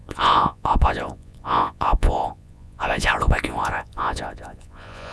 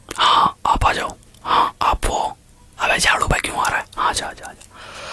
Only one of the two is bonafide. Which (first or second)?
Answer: second